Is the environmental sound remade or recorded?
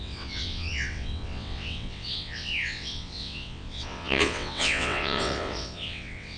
remade